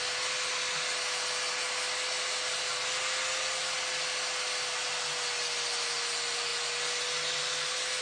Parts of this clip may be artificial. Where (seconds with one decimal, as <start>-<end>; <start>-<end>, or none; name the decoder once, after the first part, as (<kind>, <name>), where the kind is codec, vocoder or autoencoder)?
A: none